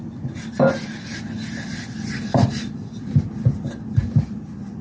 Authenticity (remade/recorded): recorded